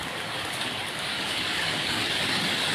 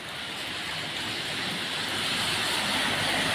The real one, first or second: second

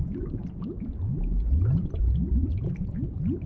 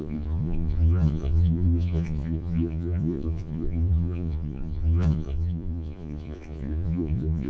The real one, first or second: first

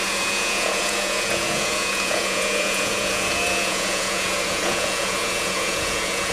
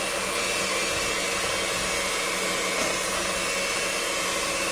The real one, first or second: second